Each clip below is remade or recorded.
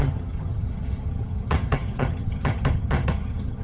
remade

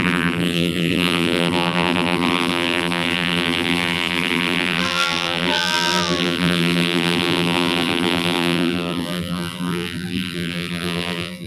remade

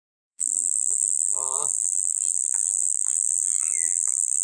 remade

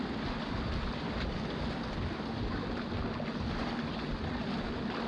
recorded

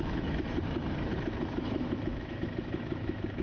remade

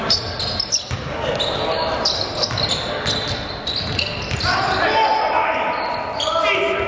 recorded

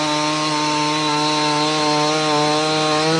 recorded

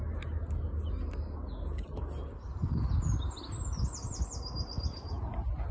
recorded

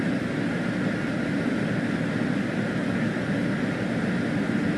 recorded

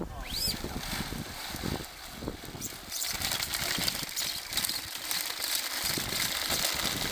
remade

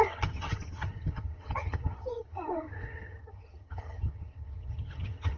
remade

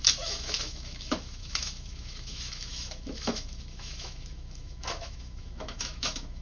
remade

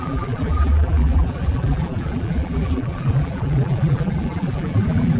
remade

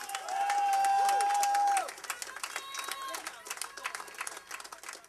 recorded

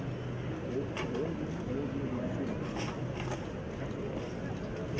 recorded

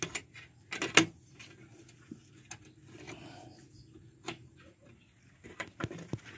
recorded